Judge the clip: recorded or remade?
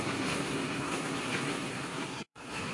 remade